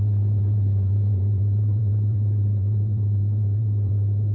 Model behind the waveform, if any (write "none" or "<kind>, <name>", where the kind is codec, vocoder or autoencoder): vocoder, BigVGAN v2